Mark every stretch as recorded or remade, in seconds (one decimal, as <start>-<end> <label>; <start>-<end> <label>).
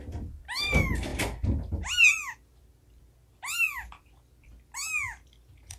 0.0-5.8 recorded